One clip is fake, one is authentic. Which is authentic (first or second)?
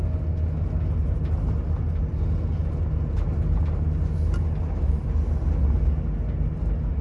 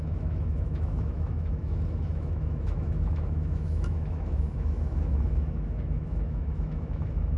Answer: first